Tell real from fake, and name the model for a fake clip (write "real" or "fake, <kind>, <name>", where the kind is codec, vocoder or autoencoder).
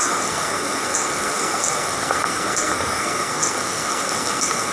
fake, codec, SNAC